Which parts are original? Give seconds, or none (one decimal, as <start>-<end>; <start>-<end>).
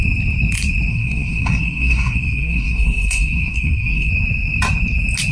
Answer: 0.0-0.9; 4.1-5.3